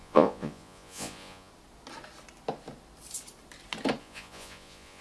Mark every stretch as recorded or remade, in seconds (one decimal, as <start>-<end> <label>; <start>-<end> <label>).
0.0-1.5 remade; 1.5-4.0 recorded; 4.0-5.0 remade